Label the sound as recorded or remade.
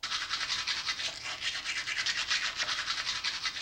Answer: recorded